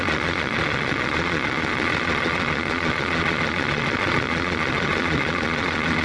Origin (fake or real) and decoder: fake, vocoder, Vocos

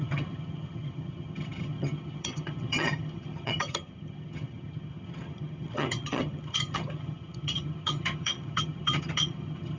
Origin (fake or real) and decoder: fake, vocoder, HiFi-GAN